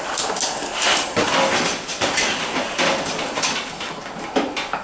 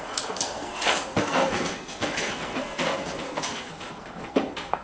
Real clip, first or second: first